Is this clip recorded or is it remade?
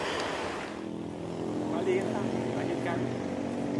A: recorded